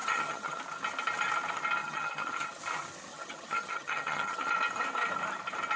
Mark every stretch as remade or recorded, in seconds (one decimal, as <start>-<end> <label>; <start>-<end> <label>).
0.0-0.6 remade; 0.6-1.8 recorded; 1.8-2.6 remade; 2.6-3.1 recorded; 3.1-4.5 remade; 4.5-5.8 recorded

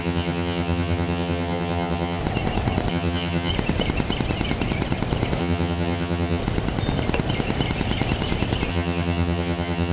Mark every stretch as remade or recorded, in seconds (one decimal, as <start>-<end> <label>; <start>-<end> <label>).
0.0-2.2 remade; 2.2-2.9 recorded; 2.9-3.5 remade; 3.5-5.4 recorded; 5.4-6.4 remade; 6.4-8.7 recorded; 8.7-9.9 remade

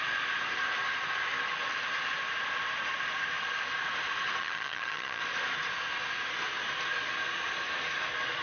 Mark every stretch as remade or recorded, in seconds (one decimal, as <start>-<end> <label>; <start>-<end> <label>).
0.0-4.4 recorded; 4.4-5.2 remade; 5.2-8.4 recorded

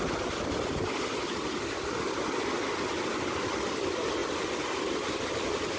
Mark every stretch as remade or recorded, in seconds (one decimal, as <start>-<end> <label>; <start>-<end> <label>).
0.0-5.8 recorded

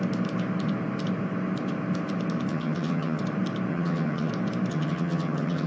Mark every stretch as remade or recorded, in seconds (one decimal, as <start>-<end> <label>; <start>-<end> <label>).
0.0-2.5 recorded; 2.5-3.2 remade; 3.2-3.7 recorded; 3.7-4.3 remade; 4.3-4.7 recorded; 4.7-5.7 remade

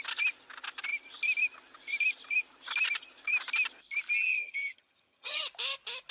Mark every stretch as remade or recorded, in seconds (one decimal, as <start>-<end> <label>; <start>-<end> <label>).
0.0-4.3 recorded; 4.3-5.4 remade; 5.4-6.1 recorded

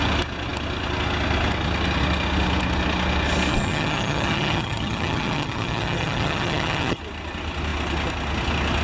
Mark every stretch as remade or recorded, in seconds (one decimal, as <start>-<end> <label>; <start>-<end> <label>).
0.0-3.5 recorded; 3.5-7.0 remade; 7.0-8.8 recorded